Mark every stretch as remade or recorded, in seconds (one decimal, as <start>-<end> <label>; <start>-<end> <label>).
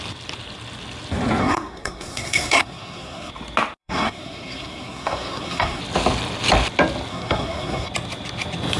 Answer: 0.0-1.4 recorded; 1.4-3.3 remade; 3.3-3.8 recorded; 3.8-5.8 remade; 5.8-7.1 recorded; 7.1-7.9 remade; 7.9-8.8 recorded